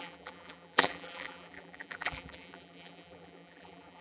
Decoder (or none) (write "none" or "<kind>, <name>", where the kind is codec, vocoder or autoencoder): vocoder, BigVGAN v2